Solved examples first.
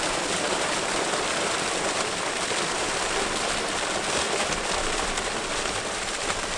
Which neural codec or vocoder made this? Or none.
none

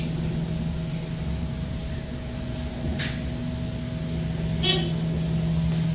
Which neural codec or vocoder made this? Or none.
none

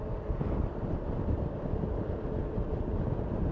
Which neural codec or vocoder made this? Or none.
none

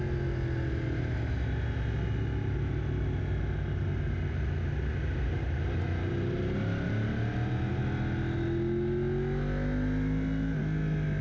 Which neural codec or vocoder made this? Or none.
none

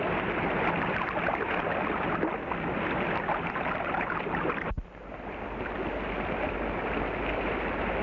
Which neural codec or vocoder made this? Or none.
none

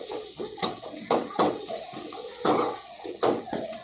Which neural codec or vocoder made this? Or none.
vocoder, WaveNeXt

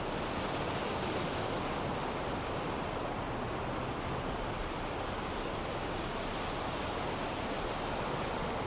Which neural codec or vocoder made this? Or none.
none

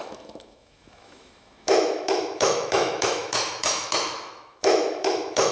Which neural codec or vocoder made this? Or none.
autoencoder, DAC-VAE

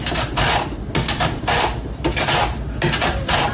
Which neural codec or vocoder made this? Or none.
none